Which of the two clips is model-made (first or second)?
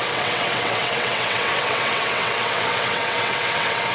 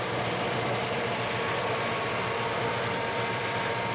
first